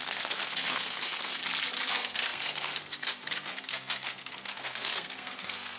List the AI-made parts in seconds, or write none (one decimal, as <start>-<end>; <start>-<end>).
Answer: 0.0-1.4; 1.9-5.8